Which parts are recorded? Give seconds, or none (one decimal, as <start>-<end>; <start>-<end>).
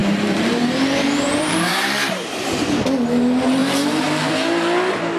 2.5-3.6; 4.3-5.2